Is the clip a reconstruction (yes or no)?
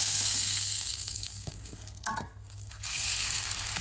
yes